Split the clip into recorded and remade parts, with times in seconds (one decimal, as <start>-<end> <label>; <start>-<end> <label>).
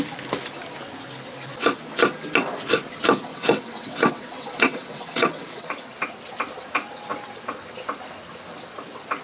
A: 0.0-3.3 recorded; 3.3-5.9 remade; 5.9-9.2 recorded